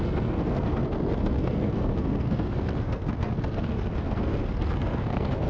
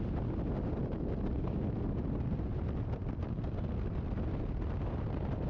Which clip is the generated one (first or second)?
first